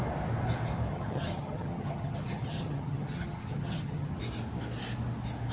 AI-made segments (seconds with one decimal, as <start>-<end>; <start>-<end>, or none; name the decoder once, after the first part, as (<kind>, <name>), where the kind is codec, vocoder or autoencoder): 0.9-4.2 (vocoder, HiFi-GAN)